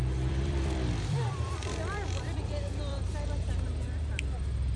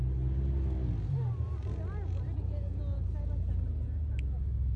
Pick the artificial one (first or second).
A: first